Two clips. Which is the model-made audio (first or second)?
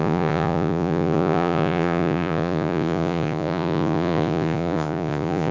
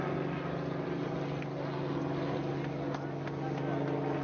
first